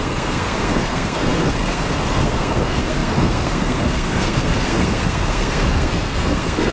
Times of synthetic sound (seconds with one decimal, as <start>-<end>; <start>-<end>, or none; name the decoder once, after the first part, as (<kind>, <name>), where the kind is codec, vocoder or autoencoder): 0.0-6.7 (codec, SNAC)